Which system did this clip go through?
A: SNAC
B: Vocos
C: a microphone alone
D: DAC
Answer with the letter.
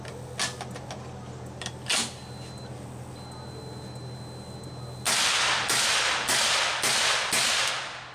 C